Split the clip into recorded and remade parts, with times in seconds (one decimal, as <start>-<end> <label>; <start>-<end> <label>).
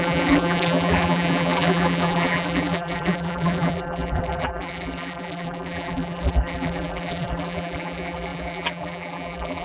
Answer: 0.0-9.6 remade